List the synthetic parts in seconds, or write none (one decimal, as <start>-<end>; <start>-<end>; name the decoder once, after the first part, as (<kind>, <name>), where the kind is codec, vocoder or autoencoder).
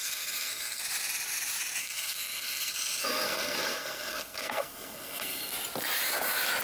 0.0-0.8 (codec, SNAC); 1.8-5.5